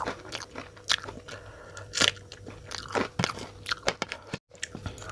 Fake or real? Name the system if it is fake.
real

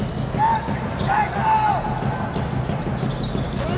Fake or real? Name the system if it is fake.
real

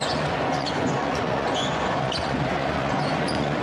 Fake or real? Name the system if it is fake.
fake, vocoder, Vocos